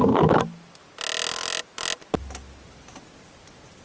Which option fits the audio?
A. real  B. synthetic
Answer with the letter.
A